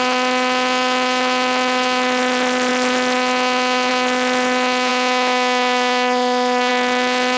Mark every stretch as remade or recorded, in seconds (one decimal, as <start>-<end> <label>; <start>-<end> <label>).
0.0-7.4 recorded